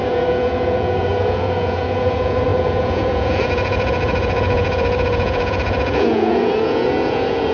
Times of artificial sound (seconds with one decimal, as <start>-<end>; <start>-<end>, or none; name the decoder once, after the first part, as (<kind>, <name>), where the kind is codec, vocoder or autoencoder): 0.0-7.5 (vocoder, Vocos)

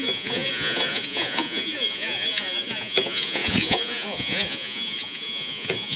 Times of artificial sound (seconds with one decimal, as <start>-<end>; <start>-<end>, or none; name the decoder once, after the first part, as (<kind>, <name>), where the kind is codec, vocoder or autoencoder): 0.0-6.0 (vocoder, Vocos)

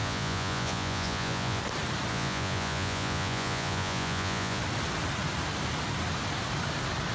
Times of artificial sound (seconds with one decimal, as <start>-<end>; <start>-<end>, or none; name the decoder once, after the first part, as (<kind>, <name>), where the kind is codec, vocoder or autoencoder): 0.0-1.6 (vocoder, Vocos); 2.1-4.6

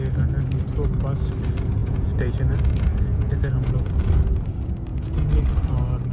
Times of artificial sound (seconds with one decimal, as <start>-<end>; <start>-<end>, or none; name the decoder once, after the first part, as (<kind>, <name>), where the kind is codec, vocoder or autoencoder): 1.8-2.3 (vocoder, Vocos); 2.9-3.9; 4.9-5.4

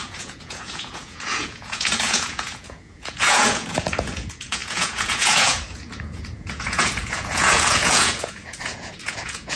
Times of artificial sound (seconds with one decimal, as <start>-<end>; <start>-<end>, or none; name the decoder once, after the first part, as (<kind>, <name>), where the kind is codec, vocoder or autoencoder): 0.0-9.6 (vocoder, Vocos)